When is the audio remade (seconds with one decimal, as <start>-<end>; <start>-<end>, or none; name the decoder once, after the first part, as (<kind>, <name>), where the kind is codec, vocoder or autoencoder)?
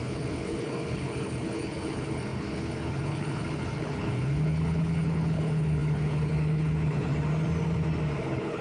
0.0-7.1 (codec, HILCodec); 8.2-8.6